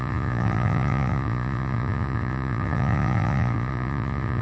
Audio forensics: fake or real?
fake